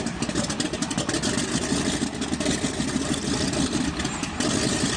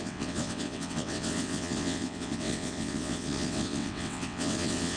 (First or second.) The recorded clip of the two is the first